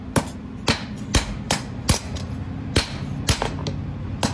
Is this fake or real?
real